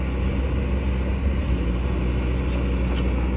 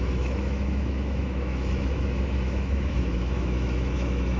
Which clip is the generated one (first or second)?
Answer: second